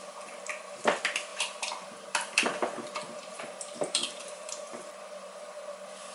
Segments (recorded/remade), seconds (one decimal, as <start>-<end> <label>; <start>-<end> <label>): 0.0-1.3 recorded; 1.3-5.0 remade; 5.0-6.1 recorded